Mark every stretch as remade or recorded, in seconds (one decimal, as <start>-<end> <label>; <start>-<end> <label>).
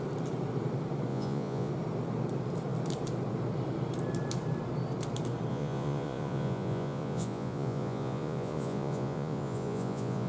0.0-1.1 recorded; 1.1-1.7 remade; 1.7-5.5 recorded; 5.5-10.3 remade